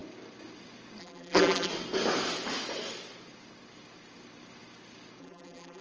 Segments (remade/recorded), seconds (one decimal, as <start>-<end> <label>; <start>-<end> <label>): 0.0-1.0 recorded; 1.0-1.7 remade; 1.7-5.2 recorded; 5.2-5.8 remade